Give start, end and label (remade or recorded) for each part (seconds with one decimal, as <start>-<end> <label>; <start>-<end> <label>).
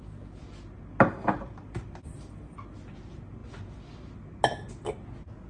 0.0-5.5 recorded